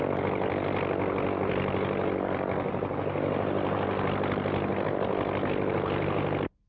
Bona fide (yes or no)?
yes